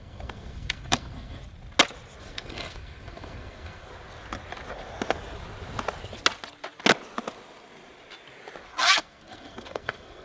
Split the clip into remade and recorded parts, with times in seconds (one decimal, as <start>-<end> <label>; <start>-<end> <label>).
0.0-1.4 remade; 1.4-2.2 recorded; 2.2-3.9 remade; 3.9-8.8 recorded; 8.8-10.2 remade